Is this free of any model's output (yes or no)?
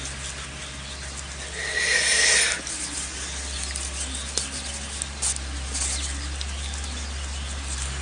yes